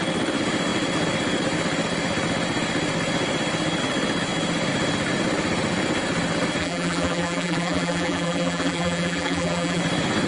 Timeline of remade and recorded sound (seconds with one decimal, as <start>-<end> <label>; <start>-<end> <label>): 0.0-6.6 recorded; 6.6-9.8 remade; 9.8-10.3 recorded